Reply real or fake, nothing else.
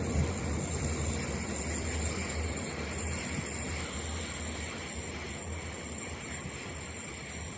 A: real